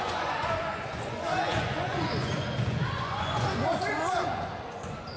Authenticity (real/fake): fake